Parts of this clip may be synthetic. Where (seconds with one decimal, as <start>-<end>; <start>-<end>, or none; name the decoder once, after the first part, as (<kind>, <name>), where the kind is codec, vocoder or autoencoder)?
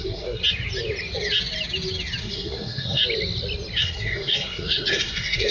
0.0-0.4 (codec, SNAC); 2.2-3.0; 3.8-5.5